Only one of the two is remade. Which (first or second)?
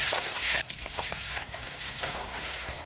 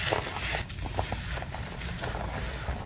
first